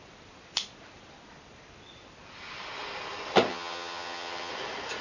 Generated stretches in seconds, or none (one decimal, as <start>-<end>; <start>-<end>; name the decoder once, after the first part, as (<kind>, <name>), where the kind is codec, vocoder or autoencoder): 3.5-4.5 (vocoder, HiFi-GAN)

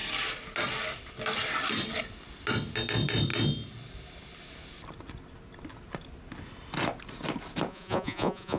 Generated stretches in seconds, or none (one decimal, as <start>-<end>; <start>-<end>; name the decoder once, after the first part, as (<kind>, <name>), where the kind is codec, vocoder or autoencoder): 7.7-8.6 (vocoder, Vocos)

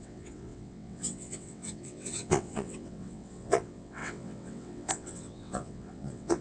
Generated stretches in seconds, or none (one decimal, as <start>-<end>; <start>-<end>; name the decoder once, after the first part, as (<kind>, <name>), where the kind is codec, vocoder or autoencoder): 0.0-6.4 (vocoder, WaveNeXt)